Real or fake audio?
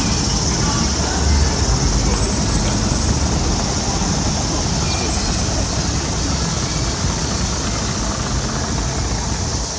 real